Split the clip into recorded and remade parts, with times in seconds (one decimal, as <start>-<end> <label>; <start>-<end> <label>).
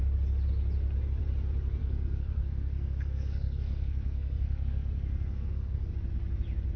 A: 0.0-1.8 recorded; 1.8-5.9 remade; 5.9-6.8 recorded